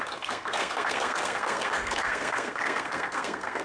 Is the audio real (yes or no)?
no